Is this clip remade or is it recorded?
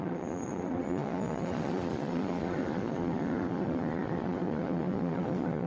remade